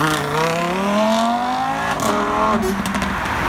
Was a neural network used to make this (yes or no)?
no